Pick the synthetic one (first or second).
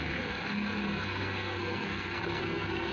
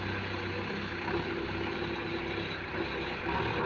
first